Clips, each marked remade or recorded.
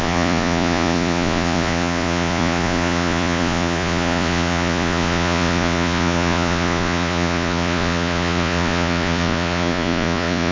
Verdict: remade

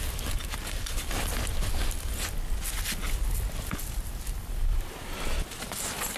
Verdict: recorded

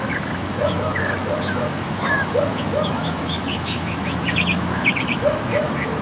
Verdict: remade